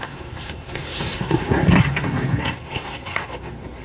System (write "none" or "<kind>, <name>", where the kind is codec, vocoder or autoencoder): codec, SNAC